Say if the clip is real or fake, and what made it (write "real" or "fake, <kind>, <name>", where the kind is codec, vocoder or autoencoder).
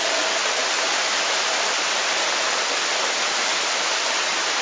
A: real